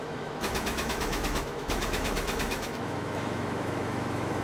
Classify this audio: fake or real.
fake